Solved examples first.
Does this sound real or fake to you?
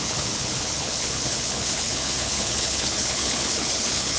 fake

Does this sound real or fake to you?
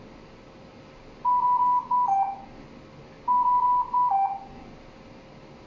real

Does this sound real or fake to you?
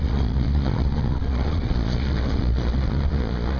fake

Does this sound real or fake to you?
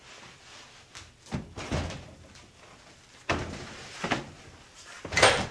real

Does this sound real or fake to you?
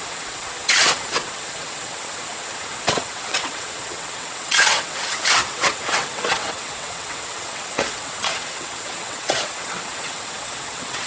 fake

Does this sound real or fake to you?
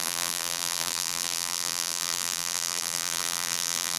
fake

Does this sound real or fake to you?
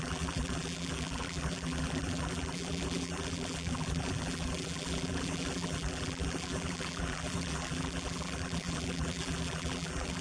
fake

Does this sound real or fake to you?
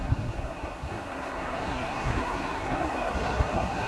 fake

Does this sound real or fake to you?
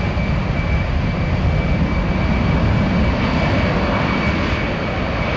real